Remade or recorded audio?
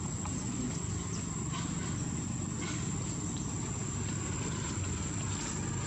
recorded